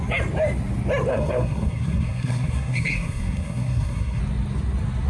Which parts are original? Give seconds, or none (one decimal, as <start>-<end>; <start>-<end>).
0.0-1.1; 4.2-5.1